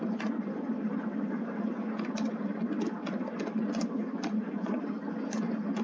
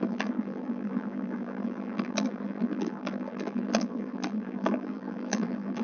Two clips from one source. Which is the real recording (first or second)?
first